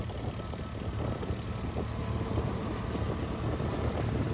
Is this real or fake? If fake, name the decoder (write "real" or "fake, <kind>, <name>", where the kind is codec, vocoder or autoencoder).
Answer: real